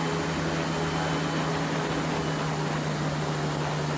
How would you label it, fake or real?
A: real